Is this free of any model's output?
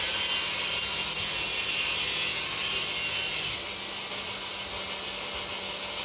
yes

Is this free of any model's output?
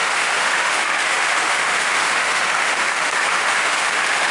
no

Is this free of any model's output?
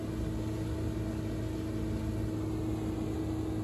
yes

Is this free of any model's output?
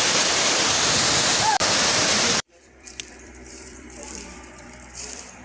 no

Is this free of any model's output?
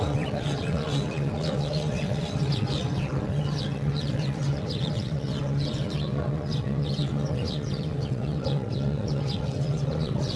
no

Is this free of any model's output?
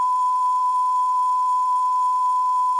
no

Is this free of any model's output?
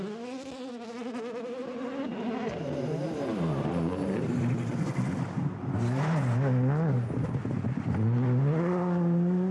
yes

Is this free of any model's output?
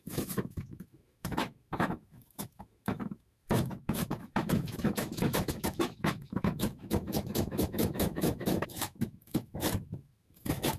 no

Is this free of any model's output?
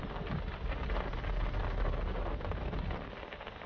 yes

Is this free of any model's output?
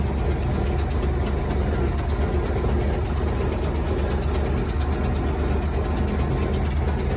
yes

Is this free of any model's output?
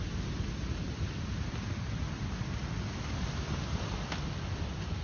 yes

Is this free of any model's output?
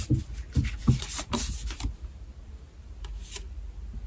yes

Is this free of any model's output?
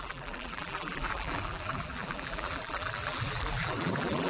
no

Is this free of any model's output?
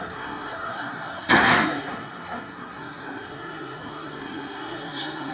no